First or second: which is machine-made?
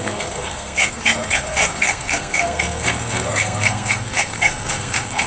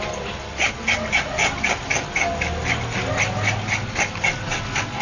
first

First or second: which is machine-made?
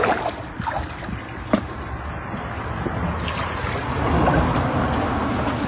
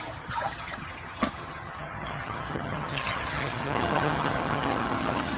second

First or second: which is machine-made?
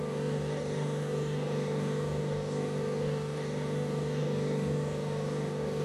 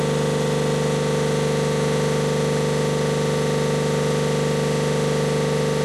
first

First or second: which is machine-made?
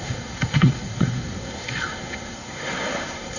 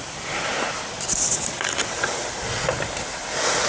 first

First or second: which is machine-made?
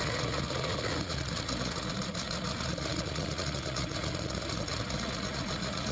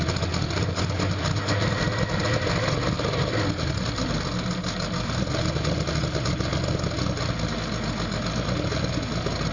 first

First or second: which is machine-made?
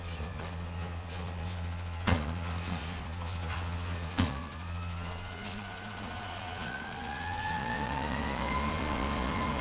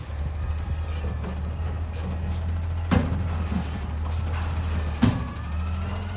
first